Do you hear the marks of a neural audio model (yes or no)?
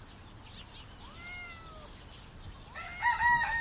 no